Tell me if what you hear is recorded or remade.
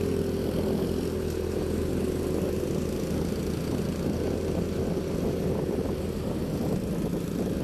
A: recorded